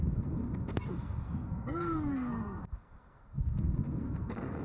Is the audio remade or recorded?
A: remade